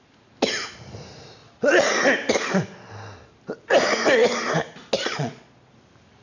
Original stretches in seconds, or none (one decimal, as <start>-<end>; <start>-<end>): 0.0-1.4; 2.0-5.0; 5.7-6.2